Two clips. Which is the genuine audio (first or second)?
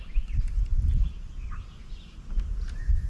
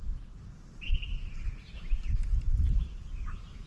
first